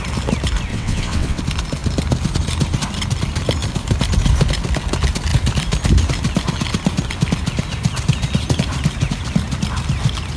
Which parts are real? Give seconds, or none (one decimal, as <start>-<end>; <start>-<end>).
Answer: 0.0-0.7; 1.4-10.4